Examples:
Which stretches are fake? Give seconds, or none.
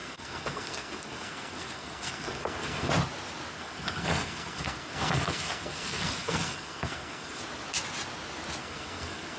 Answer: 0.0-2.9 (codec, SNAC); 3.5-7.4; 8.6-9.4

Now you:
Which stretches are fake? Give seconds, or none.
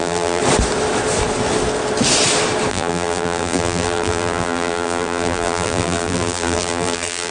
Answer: 0.0-0.4 (vocoder, BigVGAN v2); 2.7-7.3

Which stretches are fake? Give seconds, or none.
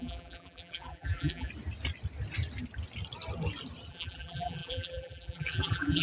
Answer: 0.0-1.5 (vocoder, BigVGAN v2); 3.9-6.0